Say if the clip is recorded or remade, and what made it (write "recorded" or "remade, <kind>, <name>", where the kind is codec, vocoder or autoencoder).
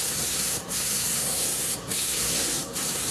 remade, codec, SNAC